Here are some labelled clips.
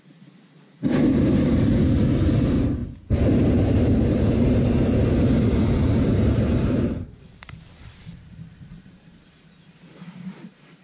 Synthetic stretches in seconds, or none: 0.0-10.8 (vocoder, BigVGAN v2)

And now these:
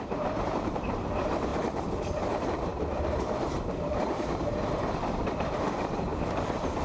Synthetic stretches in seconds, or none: 0.0-1.5 (vocoder, BigVGAN v2); 2.3-6.8

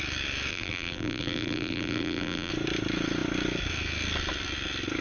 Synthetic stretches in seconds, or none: 0.5-2.5 (vocoder, BigVGAN v2)

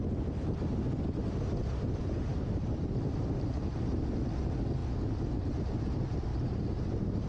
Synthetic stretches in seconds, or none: 2.3-4.0 (vocoder, BigVGAN v2); 6.3-7.3

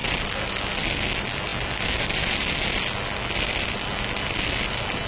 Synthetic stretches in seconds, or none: none

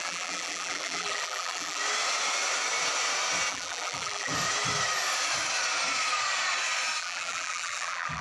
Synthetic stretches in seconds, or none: 0.0-1.8 (vocoder, BigVGAN v2); 3.5-4.3; 7.0-8.2

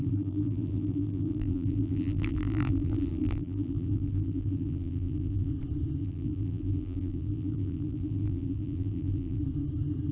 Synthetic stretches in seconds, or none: 0.0-5.5 (vocoder, BigVGAN v2); 6.0-9.4

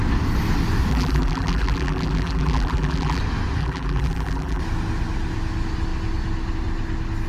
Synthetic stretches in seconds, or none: 0.9-3.2 (vocoder, BigVGAN v2); 3.6-4.6